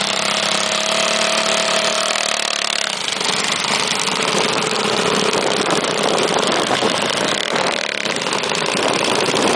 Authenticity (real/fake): real